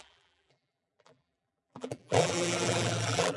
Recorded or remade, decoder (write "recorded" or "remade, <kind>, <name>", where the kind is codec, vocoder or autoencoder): remade, vocoder, BigVGAN v2